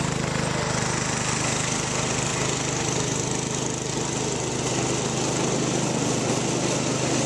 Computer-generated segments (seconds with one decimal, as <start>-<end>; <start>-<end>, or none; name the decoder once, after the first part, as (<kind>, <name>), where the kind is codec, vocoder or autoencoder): none